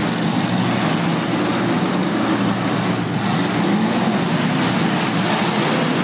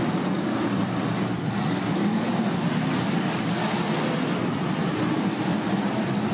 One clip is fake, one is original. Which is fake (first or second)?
second